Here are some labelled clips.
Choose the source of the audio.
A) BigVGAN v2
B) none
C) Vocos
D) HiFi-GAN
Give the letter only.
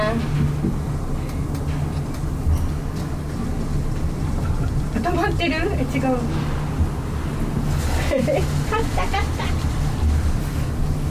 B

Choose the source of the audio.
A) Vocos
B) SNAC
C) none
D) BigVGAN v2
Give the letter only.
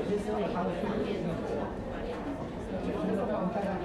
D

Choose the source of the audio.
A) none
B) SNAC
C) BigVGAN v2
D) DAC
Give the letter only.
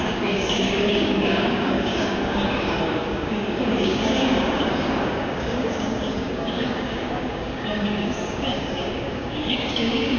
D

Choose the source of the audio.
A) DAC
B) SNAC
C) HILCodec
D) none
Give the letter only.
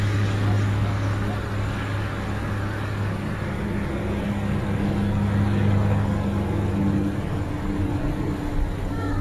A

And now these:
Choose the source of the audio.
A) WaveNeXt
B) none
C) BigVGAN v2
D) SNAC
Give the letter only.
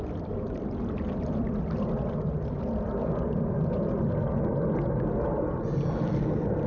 B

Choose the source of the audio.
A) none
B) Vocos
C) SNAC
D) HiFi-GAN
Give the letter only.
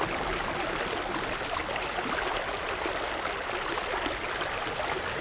A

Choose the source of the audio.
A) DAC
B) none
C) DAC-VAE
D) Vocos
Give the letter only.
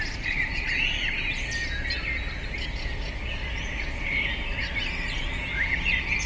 B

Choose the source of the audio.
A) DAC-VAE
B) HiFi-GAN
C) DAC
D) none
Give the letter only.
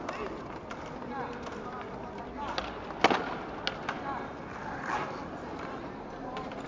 D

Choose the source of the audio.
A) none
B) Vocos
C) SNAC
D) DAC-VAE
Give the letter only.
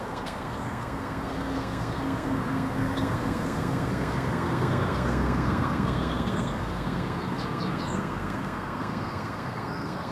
C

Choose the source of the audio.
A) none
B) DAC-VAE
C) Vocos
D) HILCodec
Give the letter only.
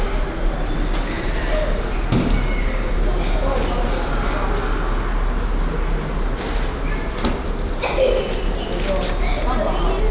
A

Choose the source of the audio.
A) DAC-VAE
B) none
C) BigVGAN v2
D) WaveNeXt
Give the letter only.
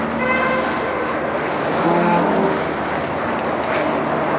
B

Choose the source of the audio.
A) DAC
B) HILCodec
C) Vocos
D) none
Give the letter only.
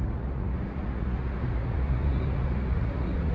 C